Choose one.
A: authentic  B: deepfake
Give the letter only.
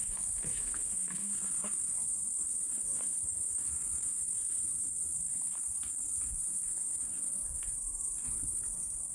B